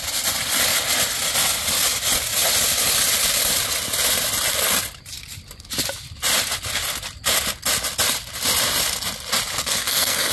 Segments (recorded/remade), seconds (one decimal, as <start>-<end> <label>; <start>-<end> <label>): 0.0-9.6 recorded; 9.6-10.3 remade